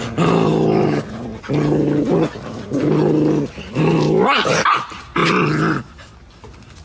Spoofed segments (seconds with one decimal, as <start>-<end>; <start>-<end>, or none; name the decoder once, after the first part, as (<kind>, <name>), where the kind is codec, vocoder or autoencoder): none